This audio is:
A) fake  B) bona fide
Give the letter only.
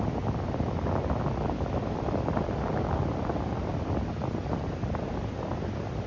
B